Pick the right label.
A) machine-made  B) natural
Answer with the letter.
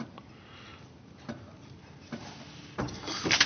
B